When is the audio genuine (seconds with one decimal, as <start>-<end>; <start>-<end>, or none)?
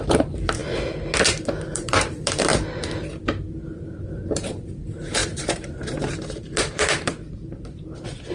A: 0.6-1.7; 2.5-3.9